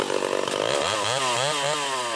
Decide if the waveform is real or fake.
real